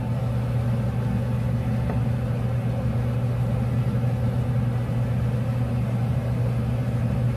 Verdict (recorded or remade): recorded